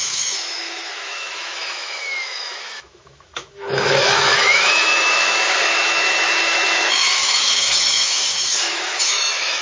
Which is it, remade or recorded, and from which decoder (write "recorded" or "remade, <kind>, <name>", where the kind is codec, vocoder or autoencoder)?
remade, autoencoder, DAC-VAE